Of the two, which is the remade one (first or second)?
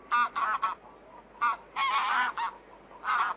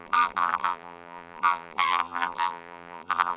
second